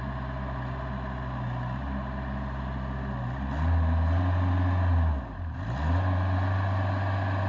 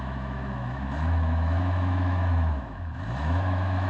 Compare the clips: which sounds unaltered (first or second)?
first